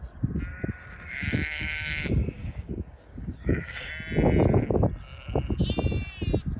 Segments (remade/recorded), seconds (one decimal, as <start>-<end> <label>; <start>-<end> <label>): 0.0-0.5 recorded; 0.5-3.9 remade; 3.9-6.6 recorded